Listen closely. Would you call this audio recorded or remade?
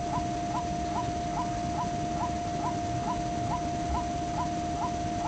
recorded